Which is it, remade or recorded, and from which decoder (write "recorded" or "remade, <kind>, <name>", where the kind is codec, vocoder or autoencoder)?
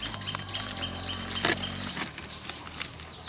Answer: recorded